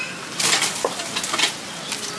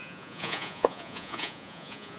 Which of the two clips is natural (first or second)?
first